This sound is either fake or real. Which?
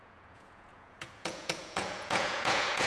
fake